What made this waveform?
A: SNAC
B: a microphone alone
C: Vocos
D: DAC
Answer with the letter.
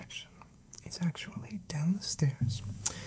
D